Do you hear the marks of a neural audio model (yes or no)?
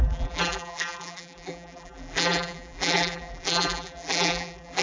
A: yes